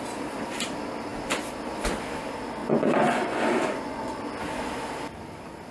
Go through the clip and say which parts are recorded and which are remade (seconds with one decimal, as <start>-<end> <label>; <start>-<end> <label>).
0.0-2.6 recorded; 2.6-4.2 remade; 4.2-5.7 recorded